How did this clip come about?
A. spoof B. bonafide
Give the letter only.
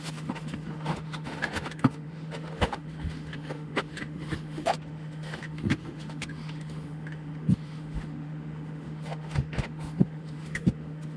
A